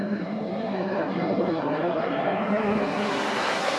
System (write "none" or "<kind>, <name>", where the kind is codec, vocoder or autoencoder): codec, SNAC